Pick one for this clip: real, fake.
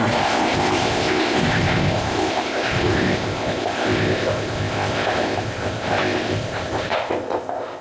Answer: fake